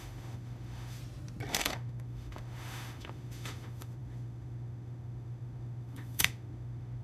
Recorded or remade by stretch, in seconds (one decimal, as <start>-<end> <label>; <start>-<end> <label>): 0.0-1.0 remade; 1.0-1.5 recorded; 1.5-7.0 remade